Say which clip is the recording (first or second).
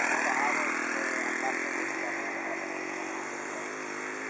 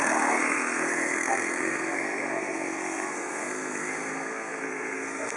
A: first